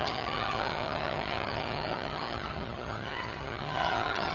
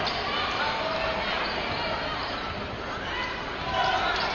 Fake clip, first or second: first